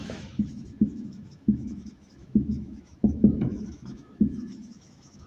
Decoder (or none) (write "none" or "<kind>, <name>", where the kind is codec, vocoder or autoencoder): autoencoder, DAC-VAE